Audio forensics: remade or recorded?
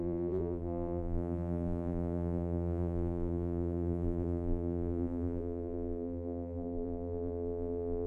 remade